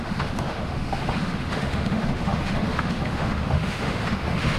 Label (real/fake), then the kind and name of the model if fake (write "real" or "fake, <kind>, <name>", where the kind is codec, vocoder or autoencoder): fake, autoencoder, DAC-VAE